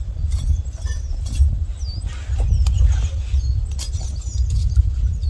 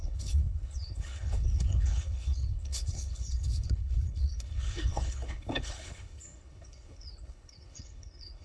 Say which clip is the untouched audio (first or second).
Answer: first